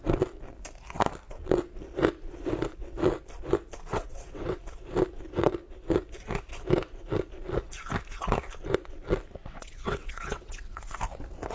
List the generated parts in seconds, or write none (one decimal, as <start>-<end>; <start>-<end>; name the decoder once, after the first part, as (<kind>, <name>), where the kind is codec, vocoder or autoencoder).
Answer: 3.9-4.6 (vocoder, WaveNeXt); 9.4-11.0